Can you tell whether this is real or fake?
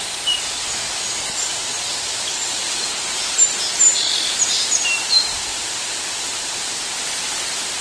real